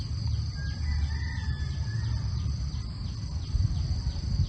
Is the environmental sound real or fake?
real